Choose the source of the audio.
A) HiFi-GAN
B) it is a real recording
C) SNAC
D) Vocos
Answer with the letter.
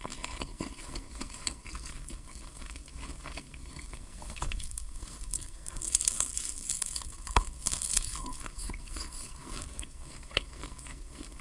C